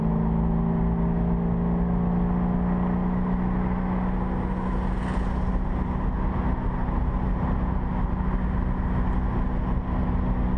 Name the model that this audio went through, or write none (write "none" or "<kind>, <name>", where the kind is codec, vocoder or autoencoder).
none